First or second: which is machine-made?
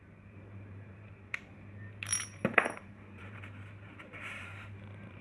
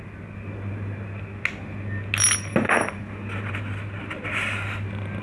first